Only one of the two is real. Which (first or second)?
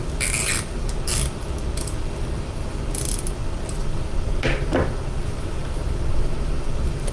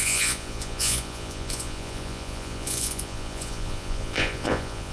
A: first